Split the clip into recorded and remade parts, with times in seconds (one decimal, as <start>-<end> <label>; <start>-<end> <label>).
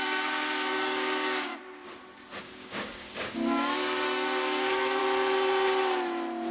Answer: 0.0-1.5 remade; 1.5-2.4 recorded; 2.4-5.0 remade; 5.0-6.5 recorded